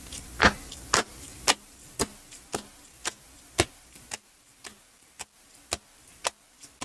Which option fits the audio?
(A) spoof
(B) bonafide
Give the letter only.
B